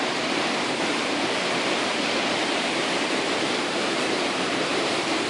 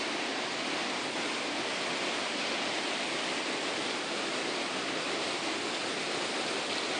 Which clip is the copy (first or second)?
first